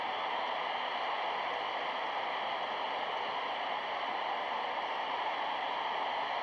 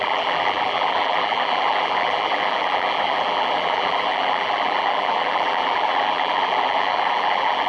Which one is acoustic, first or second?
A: first